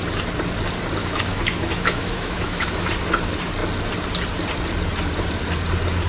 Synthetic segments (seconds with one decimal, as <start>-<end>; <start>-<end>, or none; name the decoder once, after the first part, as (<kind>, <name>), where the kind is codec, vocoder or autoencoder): 1.0-2.9 (autoencoder, DAC-VAE)

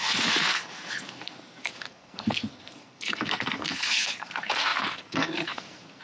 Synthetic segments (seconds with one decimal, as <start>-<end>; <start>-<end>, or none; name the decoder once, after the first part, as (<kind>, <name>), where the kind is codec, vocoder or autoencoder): 0.0-6.0 (codec, SNAC)

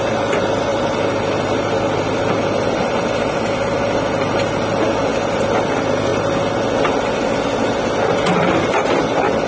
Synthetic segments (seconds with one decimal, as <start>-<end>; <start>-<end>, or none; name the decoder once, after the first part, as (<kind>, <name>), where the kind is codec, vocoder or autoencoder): none

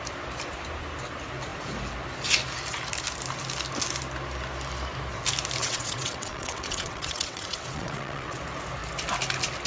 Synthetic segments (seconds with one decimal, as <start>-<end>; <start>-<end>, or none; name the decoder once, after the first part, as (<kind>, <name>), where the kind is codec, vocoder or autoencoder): 5.6-8.4 (vocoder, WaveNeXt)